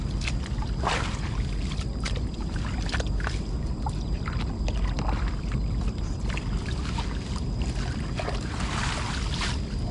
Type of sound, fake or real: real